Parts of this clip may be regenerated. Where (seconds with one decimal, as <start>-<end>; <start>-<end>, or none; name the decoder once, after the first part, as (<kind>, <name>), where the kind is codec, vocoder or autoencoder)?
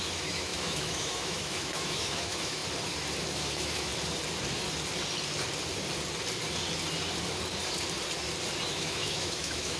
0.0-2.6 (autoencoder, DAC-VAE); 3.2-3.9; 8.7-9.8